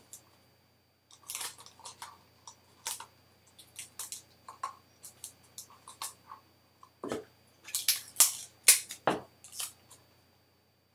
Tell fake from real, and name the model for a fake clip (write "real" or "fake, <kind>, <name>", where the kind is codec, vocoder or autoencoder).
real